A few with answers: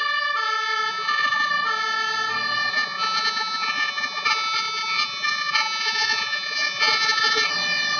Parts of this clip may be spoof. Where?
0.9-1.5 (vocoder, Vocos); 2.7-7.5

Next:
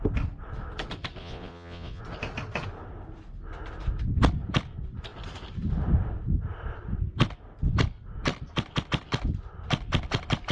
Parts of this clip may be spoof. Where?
1.2-2.0 (vocoder, Vocos)

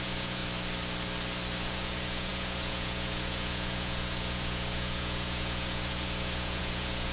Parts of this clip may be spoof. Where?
0.0-0.4 (vocoder, Vocos); 1.6-7.1

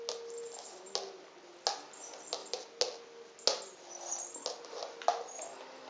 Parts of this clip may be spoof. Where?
none

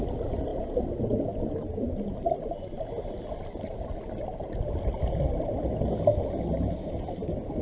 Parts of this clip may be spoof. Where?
none

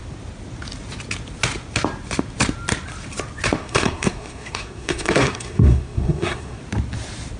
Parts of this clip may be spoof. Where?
3.6-6.6 (codec, SNAC)